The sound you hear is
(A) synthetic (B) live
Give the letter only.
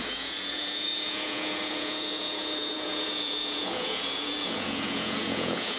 A